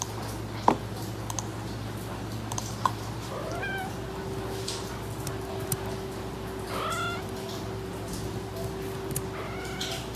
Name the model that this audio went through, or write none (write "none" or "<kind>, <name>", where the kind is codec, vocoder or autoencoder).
none